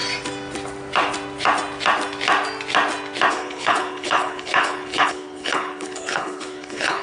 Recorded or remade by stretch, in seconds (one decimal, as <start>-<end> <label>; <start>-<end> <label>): 0.0-3.3 recorded; 3.3-7.0 remade